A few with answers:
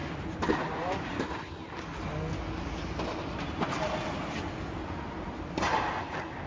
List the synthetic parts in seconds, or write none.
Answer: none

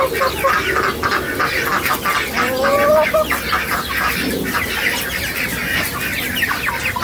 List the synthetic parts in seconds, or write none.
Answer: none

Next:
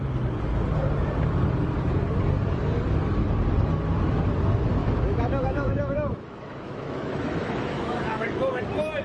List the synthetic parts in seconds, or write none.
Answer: 4.8-8.6 (autoencoder, DAC-VAE)